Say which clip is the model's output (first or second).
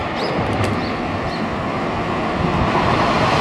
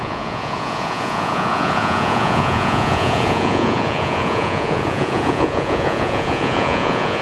second